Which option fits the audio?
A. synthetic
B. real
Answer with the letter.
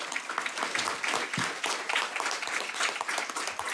B